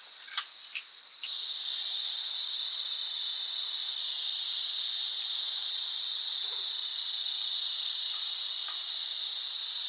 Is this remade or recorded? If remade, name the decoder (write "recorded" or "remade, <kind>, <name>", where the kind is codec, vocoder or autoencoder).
recorded